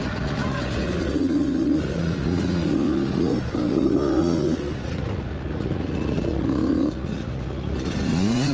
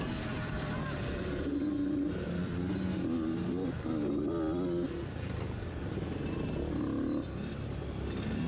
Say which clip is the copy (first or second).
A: first